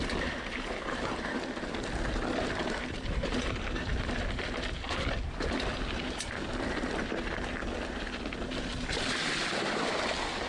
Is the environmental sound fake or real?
real